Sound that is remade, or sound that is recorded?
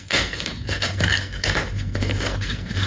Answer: remade